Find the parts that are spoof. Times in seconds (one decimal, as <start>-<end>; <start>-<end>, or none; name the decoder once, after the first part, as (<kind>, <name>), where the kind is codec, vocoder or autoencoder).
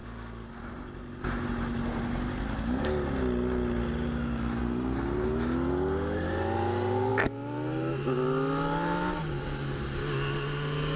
none